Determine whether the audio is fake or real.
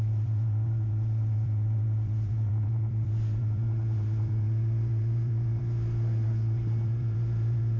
fake